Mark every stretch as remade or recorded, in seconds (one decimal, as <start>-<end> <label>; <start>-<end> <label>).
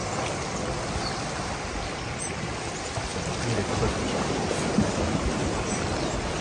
0.0-6.4 recorded